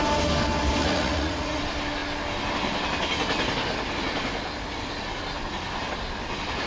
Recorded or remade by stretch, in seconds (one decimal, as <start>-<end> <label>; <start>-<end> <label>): 0.0-0.8 recorded; 0.8-1.6 remade; 1.6-6.7 recorded